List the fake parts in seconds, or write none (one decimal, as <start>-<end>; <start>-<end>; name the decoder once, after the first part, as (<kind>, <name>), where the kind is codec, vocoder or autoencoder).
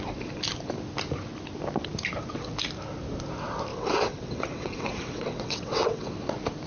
3.7-6.1 (vocoder, WaveNeXt)